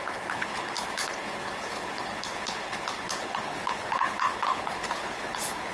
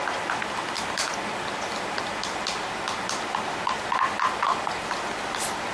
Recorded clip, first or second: second